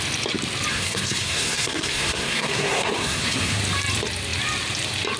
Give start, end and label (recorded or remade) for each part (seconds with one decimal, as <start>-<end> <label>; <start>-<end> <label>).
0.0-0.7 recorded; 0.7-3.6 remade; 3.6-5.2 recorded